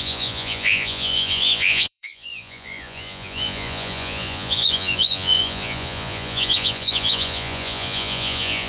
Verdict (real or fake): fake